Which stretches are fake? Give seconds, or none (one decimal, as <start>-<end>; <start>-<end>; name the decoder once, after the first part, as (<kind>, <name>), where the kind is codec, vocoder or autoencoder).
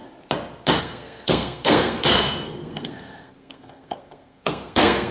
0.8-5.1 (codec, SNAC)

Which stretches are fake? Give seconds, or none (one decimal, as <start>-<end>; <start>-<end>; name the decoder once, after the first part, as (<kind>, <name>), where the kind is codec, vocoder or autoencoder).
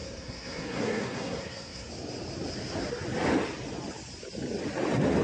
0.0-1.9 (codec, SNAC)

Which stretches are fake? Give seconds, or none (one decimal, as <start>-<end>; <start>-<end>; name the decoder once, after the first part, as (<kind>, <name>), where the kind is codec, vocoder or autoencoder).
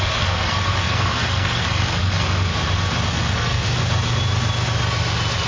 0.0-2.5 (codec, SNAC); 3.1-3.8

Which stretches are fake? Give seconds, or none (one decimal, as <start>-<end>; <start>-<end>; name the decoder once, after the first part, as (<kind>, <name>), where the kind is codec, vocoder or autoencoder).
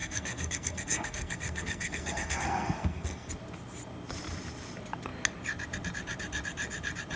0.0-3.3 (codec, SNAC)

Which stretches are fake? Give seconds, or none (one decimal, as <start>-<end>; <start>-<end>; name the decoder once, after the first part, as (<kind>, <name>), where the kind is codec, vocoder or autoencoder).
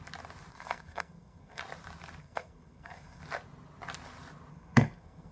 0.5-1.6 (codec, SNAC); 2.2-3.2; 4.5-5.3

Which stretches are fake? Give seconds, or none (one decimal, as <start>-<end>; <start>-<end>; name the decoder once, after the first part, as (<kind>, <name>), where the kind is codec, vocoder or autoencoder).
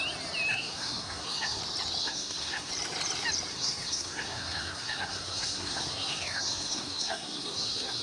0.5-1.6 (codec, SNAC); 2.0-2.7; 3.5-8.0